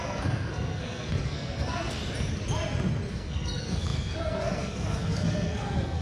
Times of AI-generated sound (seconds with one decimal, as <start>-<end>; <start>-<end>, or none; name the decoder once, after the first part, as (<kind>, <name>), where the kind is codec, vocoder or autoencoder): 0.0-2.0 (codec, SNAC); 3.1-6.0